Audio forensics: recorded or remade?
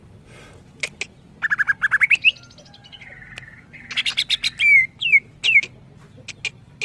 recorded